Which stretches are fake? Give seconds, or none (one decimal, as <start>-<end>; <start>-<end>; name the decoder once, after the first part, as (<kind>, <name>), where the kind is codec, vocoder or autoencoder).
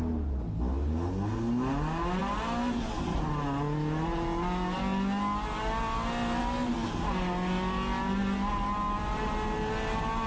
none